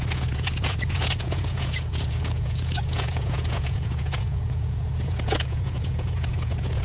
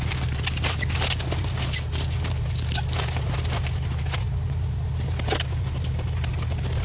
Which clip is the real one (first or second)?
second